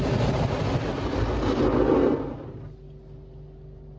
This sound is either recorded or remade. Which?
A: recorded